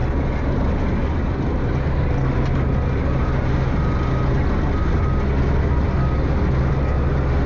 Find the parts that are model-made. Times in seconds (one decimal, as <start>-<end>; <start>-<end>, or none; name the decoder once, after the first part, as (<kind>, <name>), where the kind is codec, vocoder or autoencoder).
none